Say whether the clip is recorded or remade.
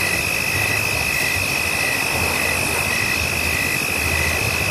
recorded